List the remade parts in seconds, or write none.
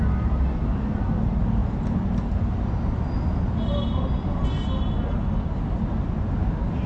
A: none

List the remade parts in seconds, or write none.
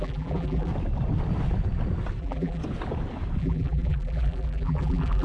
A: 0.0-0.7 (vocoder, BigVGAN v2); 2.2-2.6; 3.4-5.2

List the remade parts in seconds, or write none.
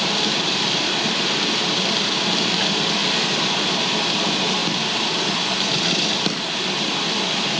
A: 0.0-3.0 (vocoder, BigVGAN v2); 3.7-7.6